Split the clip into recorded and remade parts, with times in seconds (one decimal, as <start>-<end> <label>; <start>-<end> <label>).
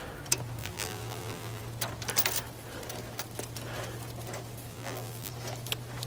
0.0-0.6 recorded; 0.6-1.6 remade; 1.6-4.7 recorded; 4.7-5.3 remade; 5.3-6.1 recorded